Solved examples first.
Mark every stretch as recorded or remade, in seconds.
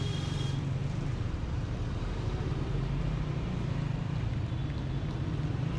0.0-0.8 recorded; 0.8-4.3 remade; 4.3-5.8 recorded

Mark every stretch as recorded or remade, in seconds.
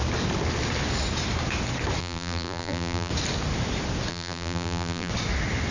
0.0-2.0 recorded; 2.0-3.1 remade; 3.1-4.1 recorded; 4.1-5.1 remade; 5.1-5.7 recorded